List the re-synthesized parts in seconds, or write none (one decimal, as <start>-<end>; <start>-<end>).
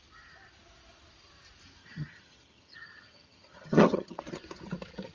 1.8-4.2